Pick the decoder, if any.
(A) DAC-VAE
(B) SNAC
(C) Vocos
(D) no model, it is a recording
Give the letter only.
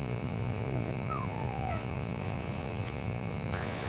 C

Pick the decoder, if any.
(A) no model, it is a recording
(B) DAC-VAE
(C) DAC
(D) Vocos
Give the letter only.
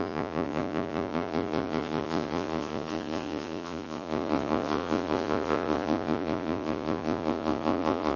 D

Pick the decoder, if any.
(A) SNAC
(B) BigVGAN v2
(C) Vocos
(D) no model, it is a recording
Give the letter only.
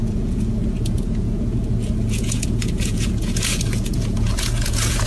C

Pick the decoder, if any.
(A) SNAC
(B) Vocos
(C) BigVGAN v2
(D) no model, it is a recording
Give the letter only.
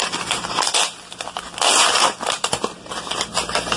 D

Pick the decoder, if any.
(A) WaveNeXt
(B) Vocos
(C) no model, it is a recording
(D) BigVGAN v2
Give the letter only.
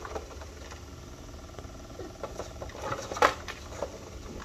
C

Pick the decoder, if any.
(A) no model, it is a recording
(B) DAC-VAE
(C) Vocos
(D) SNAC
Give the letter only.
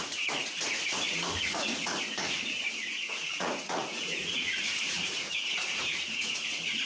C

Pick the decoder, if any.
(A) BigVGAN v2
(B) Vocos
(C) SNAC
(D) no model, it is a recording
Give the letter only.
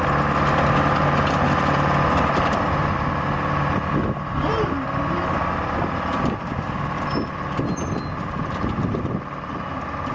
D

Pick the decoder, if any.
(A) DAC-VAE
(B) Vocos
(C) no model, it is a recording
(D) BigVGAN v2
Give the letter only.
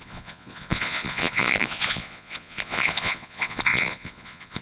B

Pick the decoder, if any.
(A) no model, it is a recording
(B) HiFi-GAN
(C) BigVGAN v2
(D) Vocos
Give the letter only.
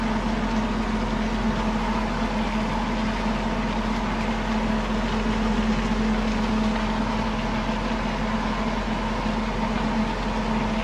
A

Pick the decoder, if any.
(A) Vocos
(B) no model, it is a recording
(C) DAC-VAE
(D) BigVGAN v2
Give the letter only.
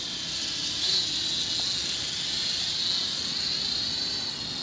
B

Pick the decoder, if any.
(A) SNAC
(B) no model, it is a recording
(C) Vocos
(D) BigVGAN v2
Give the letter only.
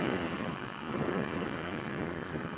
C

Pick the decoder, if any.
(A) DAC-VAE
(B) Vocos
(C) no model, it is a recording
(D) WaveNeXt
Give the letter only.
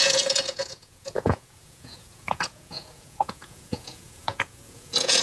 B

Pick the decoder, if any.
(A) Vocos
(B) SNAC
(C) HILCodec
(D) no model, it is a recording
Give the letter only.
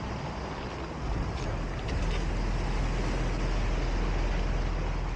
D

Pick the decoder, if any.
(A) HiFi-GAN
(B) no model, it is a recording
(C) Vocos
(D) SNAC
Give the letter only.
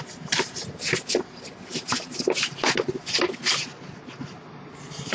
B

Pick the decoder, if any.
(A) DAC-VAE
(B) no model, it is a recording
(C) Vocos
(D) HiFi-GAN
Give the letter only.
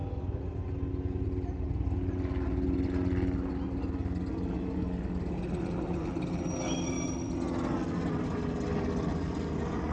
B